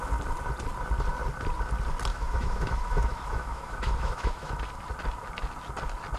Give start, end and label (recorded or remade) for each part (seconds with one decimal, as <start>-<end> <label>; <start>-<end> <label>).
0.0-2.1 recorded; 2.1-4.6 remade; 4.6-6.2 recorded